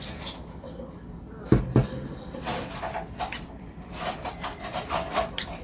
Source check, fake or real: real